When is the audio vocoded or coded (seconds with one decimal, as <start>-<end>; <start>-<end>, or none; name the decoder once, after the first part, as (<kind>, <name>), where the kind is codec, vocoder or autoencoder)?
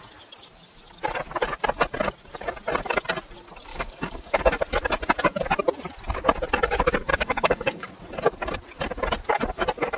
3.7-4.4 (codec, DAC); 7.1-7.9